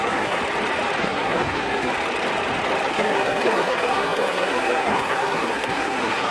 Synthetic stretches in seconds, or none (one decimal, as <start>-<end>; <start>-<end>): 0.0-0.4; 1.0-1.9; 2.9-6.3

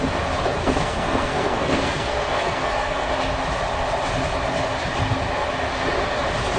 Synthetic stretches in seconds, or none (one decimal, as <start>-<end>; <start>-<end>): 0.6-3.1

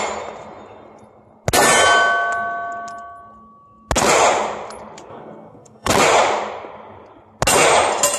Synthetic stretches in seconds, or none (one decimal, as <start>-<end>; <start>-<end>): 5.1-5.9

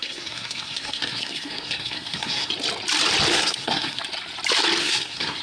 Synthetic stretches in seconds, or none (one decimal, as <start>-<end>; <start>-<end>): 0.0-2.5; 3.3-4.0; 4.8-5.4

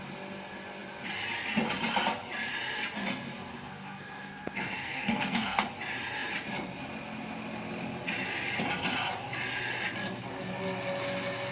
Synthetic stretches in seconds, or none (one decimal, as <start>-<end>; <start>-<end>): 3.5-5.7

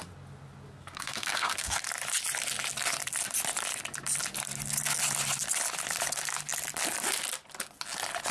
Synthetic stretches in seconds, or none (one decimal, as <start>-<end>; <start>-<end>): 0.7-1.8

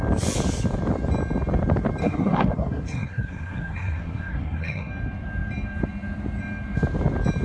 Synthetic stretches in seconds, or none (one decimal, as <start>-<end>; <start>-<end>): 2.0-4.9

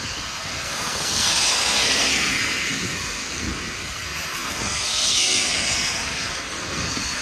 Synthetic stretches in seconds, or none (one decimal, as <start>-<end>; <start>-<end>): 0.0-7.2